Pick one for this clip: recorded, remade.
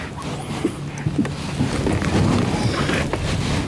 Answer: recorded